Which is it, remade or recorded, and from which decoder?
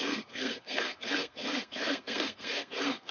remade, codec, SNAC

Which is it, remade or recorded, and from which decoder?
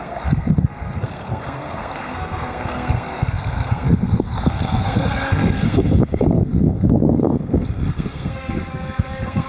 remade, codec, SNAC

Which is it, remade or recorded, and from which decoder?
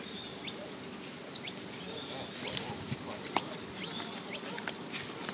recorded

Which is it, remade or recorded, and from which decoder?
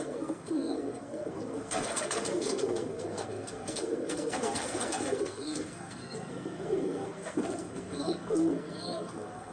remade, codec, SNAC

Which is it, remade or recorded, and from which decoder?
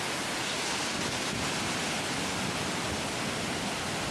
recorded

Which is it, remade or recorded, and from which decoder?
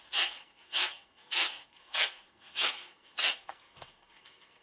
remade, codec, SNAC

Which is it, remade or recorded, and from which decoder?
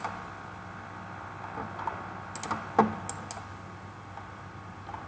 recorded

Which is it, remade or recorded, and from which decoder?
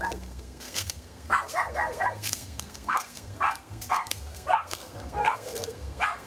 remade, codec, SNAC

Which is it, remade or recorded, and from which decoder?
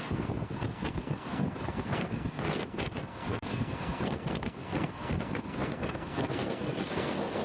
remade, codec, SNAC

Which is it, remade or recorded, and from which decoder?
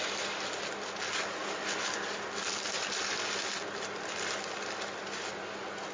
recorded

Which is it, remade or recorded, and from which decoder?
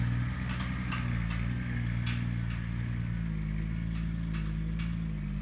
recorded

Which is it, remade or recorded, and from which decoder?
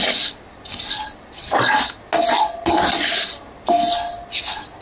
recorded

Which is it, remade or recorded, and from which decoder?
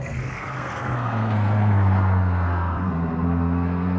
remade, codec, SNAC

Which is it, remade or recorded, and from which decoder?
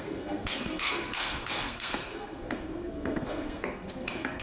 remade, codec, SNAC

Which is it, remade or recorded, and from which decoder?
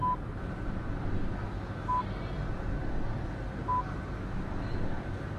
recorded